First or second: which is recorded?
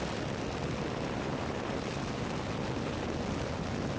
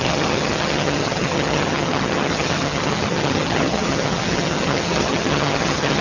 first